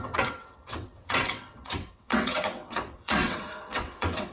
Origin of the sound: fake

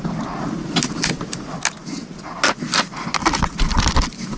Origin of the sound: real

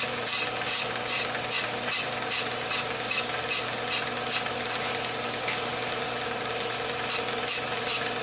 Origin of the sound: real